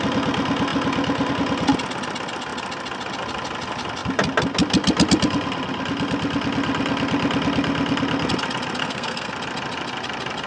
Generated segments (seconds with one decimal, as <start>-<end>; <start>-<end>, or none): 8.8-9.3